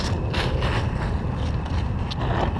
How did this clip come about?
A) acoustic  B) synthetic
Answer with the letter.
A